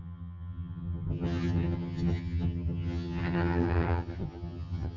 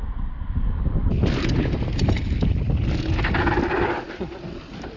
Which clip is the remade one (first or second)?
first